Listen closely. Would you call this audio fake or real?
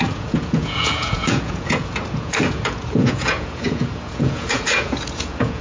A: fake